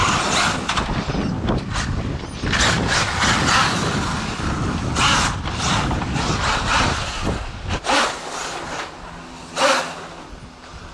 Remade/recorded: recorded